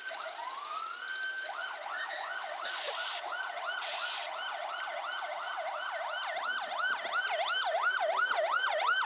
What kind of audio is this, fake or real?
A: real